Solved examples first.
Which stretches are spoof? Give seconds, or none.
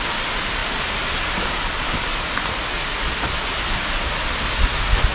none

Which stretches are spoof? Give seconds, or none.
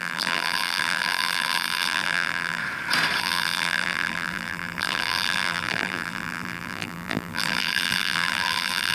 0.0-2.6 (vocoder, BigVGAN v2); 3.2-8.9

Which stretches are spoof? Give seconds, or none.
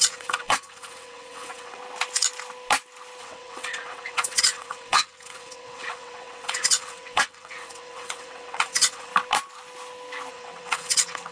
0.0-1.8 (vocoder, WaveNeXt); 3.2-9.1; 10.3-11.3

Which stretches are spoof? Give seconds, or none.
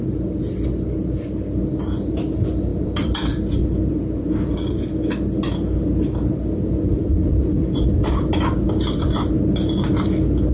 2.7-4.8 (vocoder, BigVGAN v2); 7.2-9.0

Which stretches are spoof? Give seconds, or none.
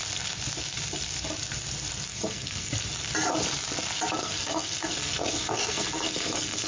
2.1-2.7 (codec, SNAC); 4.2-6.7